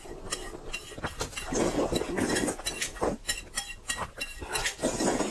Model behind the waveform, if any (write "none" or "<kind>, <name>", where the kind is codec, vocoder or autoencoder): none